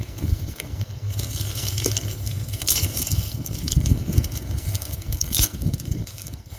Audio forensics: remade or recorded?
remade